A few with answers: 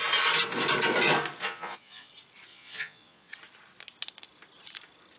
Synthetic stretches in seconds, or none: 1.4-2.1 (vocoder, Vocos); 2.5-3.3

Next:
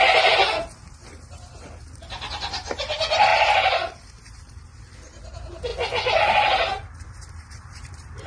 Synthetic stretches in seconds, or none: 0.0-5.7 (vocoder, BigVGAN v2); 6.2-8.3

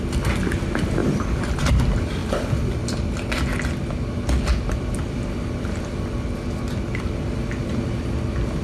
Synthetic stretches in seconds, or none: none

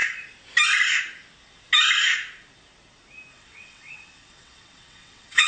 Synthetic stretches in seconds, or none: 3.3-5.5 (vocoder, WaveNeXt)

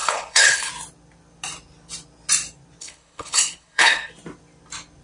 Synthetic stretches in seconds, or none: 0.0-0.7 (codec, HILCodec); 2.8-4.1

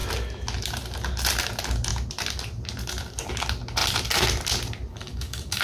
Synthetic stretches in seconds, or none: 4.9-5.6 (codec, DAC)

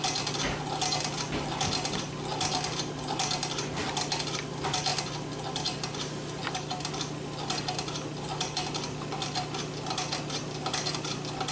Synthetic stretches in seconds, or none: none